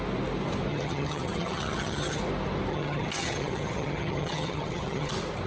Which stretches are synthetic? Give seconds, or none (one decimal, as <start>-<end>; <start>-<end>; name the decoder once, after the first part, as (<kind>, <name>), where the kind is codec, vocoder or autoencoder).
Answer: 0.7-2.2 (vocoder, HiFi-GAN); 2.7-5.1